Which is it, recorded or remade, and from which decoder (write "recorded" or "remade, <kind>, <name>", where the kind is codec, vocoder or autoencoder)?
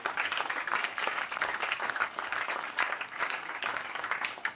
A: remade, codec, DAC